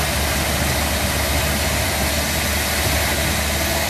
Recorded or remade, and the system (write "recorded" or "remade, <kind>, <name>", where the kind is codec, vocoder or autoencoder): recorded